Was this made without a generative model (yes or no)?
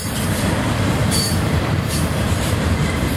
no